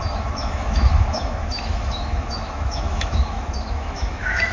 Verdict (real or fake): fake